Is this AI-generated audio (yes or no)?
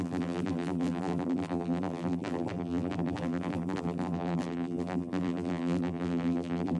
yes